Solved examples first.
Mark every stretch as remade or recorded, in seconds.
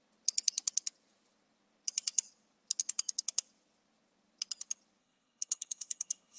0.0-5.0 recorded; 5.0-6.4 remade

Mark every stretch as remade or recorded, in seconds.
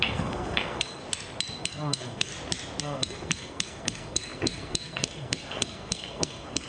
0.0-1.0 remade; 1.0-1.6 recorded; 1.6-2.3 remade; 2.3-2.8 recorded; 2.8-6.7 remade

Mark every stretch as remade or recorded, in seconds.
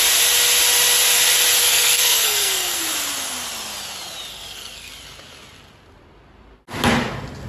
0.0-1.6 recorded; 1.6-2.8 remade; 2.8-4.3 recorded; 4.3-4.9 remade; 4.9-7.5 recorded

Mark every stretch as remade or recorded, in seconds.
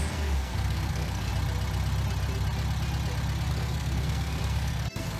0.0-1.3 remade; 1.3-3.5 recorded; 3.5-5.2 remade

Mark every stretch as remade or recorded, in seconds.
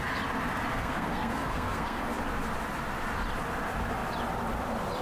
0.0-0.7 recorded; 0.7-2.2 remade; 2.2-5.0 recorded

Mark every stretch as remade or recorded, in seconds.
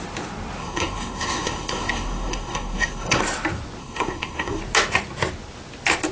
0.0-0.6 recorded; 0.6-3.2 remade; 3.2-3.8 recorded; 3.8-4.6 remade; 4.6-6.1 recorded